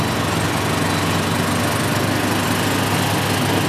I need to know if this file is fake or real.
real